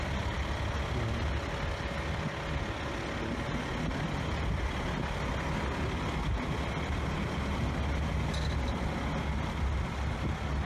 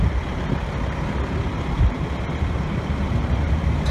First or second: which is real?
first